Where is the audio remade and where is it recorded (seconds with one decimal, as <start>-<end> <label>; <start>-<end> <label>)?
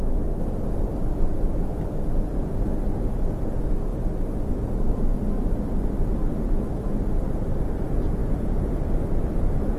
0.0-9.8 recorded